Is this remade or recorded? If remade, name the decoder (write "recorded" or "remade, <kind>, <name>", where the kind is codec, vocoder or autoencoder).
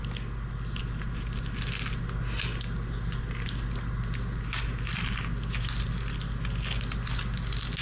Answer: recorded